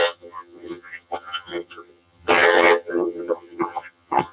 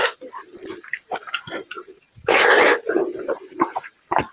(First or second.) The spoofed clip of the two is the first